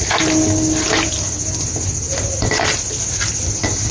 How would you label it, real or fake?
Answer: real